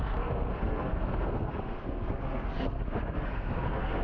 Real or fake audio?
fake